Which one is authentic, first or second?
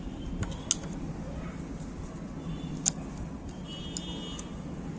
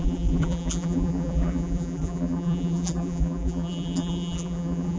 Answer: first